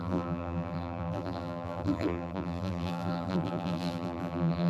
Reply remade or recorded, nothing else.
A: remade